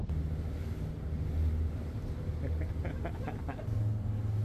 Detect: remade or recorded recorded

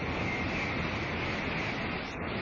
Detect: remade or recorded recorded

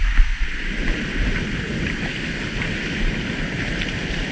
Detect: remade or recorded recorded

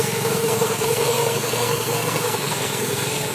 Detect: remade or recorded remade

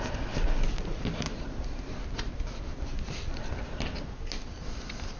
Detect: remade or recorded recorded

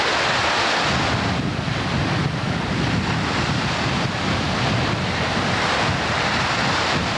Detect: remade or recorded recorded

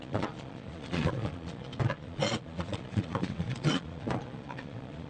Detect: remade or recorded remade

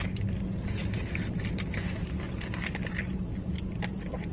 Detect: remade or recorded recorded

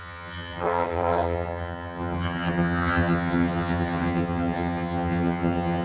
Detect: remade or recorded remade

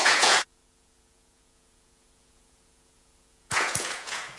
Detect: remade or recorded remade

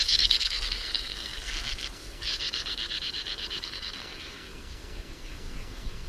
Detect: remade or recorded remade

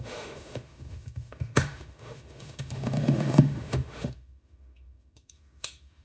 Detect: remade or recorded remade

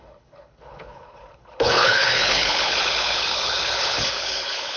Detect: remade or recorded remade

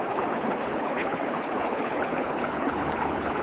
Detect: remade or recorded remade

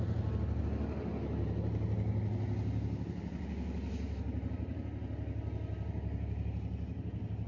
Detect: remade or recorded recorded